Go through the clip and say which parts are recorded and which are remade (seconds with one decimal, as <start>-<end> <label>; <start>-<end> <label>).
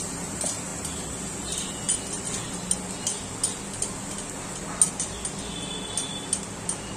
0.0-7.0 recorded